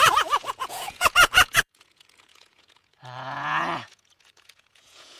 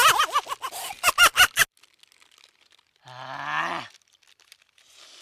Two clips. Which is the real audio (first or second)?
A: second